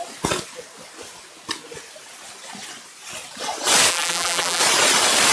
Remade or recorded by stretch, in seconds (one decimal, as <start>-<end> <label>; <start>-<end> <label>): 0.0-3.9 recorded; 3.9-4.6 remade; 4.6-5.3 recorded